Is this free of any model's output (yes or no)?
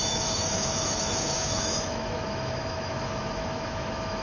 no